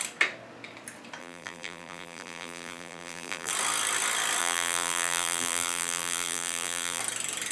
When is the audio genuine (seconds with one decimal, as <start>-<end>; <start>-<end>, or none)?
0.0-1.2; 3.5-4.4; 7.0-7.5